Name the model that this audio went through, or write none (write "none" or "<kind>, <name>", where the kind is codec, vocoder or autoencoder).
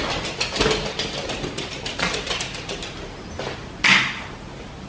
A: none